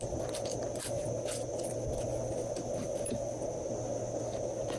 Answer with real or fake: real